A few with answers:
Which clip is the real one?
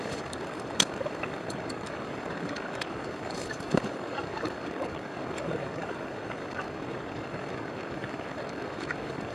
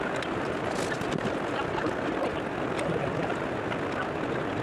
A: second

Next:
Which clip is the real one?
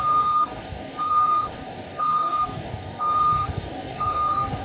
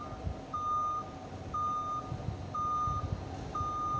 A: second